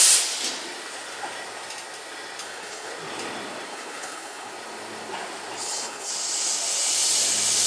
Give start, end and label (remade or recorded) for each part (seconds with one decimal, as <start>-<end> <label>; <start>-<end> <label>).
0.0-2.4 recorded; 2.4-2.9 remade; 2.9-3.7 recorded; 3.7-4.5 remade; 4.5-5.6 recorded; 5.6-6.1 remade; 6.1-7.7 recorded